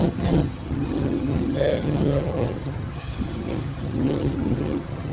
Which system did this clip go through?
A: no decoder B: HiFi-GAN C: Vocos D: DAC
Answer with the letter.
B